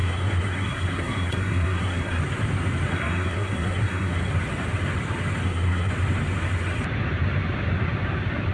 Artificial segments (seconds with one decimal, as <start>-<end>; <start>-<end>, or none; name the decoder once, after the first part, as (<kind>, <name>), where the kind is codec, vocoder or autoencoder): 0.0-2.2 (codec, SNAC); 2.9-4.3; 5.4-5.9